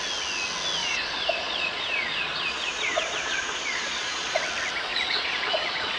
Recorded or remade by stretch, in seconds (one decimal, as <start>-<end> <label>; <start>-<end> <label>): 0.0-0.8 recorded; 0.8-4.4 remade; 4.4-4.9 recorded; 4.9-6.0 remade